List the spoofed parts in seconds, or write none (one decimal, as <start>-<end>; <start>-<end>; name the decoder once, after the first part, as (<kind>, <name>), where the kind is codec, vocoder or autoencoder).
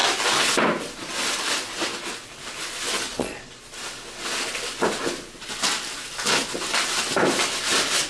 3.1-3.6 (vocoder, Vocos)